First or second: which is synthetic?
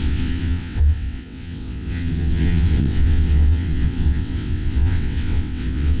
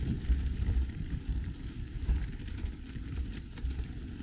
first